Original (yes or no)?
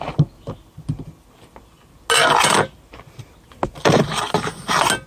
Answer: yes